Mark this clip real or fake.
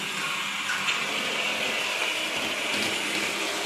real